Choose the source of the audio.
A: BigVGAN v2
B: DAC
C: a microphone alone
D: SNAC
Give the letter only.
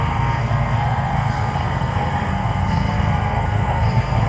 D